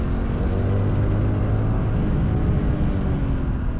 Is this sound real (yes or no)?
yes